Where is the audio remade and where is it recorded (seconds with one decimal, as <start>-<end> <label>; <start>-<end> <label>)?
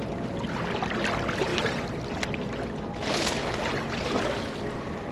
0.0-5.1 recorded